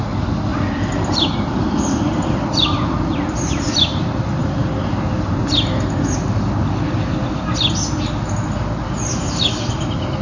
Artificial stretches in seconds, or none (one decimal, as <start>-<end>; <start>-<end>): 0.5-4.0; 4.4-5.4